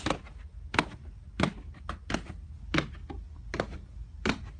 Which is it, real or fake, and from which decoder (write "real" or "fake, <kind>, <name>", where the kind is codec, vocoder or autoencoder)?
real